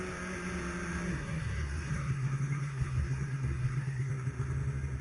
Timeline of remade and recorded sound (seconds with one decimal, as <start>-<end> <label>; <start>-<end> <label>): 0.0-1.1 recorded; 1.1-4.1 remade; 4.1-5.0 recorded